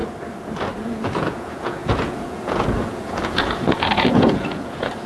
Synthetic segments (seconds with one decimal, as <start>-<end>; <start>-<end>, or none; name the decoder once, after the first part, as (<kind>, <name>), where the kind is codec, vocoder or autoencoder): 0.8-5.1 (vocoder, Vocos)